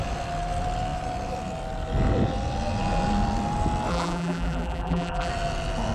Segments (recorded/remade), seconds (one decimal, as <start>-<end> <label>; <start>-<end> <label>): 0.0-3.9 recorded; 3.9-5.3 remade; 5.3-5.9 recorded